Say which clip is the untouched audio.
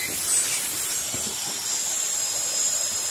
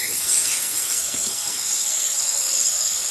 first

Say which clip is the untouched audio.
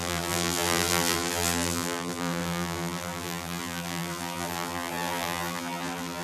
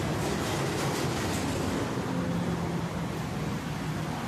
second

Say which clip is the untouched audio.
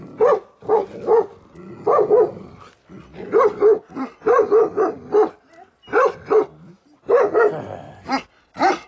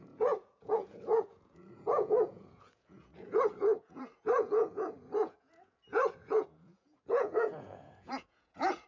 first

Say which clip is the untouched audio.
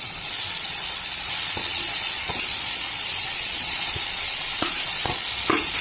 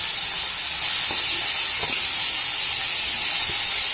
second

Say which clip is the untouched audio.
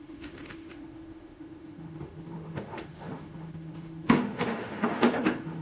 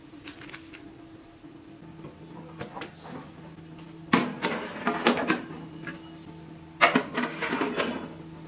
second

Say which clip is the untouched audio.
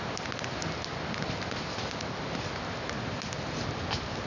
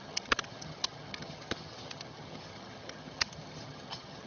first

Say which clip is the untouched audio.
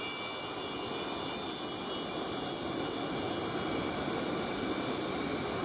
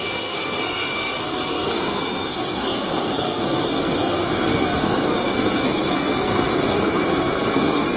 first